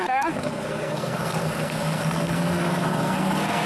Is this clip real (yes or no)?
no